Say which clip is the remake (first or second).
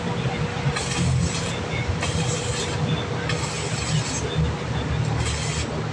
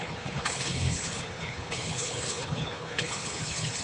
second